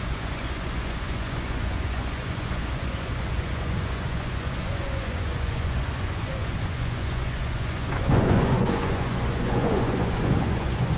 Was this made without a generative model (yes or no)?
no